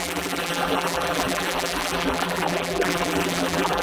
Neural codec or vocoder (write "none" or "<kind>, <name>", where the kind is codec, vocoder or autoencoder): vocoder, BigVGAN v2